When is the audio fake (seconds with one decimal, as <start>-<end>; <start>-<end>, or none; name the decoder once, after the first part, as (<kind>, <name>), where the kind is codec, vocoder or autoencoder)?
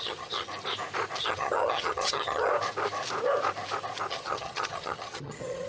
0.0-0.5 (vocoder, HiFi-GAN); 1.2-2.5; 4.1-5.7